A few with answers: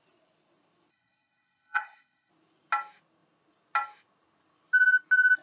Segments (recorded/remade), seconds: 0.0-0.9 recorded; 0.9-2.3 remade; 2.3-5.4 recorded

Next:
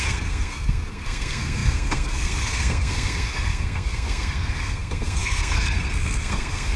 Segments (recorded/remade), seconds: 0.0-6.8 remade

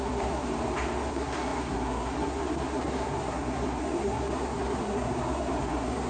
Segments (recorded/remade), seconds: 0.0-0.5 remade; 0.5-1.1 recorded; 1.1-6.1 remade

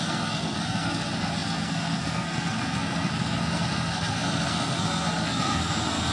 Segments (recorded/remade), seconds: 0.0-6.1 remade

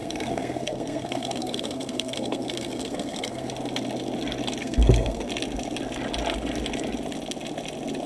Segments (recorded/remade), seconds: 0.0-3.5 remade; 3.5-4.6 recorded; 4.6-5.3 remade; 5.3-8.1 recorded

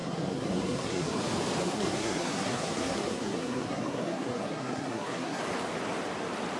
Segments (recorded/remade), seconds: 0.0-1.2 remade; 1.2-1.6 recorded; 1.6-5.4 remade; 5.4-6.6 recorded

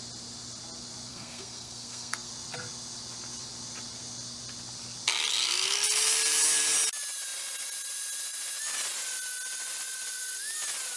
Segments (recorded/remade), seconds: 0.0-1.1 recorded; 1.1-2.3 remade; 2.3-11.0 recorded